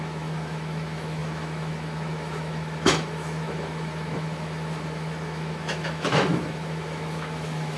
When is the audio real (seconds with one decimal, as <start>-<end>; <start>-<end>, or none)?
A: none